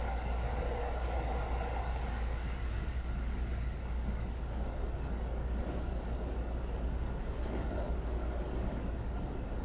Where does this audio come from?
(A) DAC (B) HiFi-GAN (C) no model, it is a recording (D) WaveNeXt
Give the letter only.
A